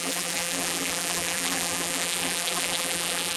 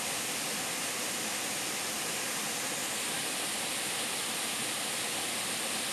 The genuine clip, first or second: second